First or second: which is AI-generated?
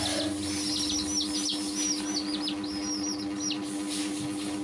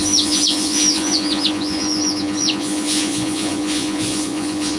second